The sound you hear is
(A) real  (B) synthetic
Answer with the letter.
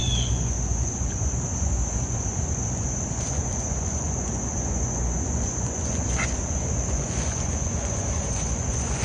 B